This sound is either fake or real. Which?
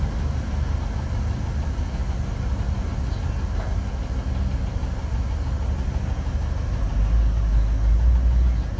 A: real